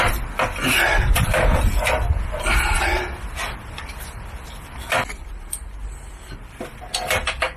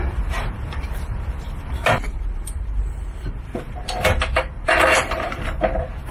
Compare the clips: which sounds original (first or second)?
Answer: first